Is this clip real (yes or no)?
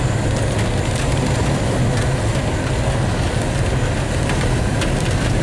yes